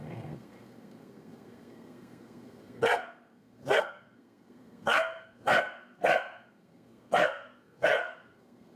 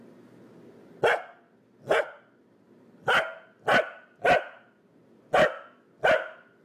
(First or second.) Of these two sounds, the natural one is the second